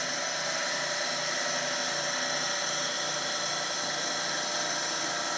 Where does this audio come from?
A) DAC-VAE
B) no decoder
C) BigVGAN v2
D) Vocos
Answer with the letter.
B